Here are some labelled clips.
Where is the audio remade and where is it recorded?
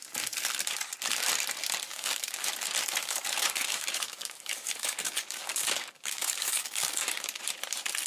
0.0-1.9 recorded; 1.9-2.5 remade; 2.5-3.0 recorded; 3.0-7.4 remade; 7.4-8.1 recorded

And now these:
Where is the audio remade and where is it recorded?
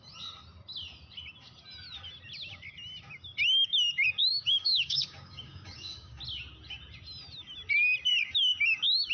0.0-4.3 recorded; 4.3-6.2 remade; 6.2-9.1 recorded